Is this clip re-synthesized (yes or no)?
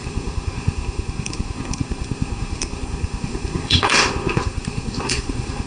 yes